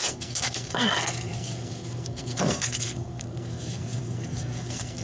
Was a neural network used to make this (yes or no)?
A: yes